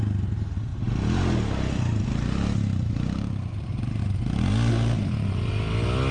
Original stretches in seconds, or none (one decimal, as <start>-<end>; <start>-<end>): 0.0-6.1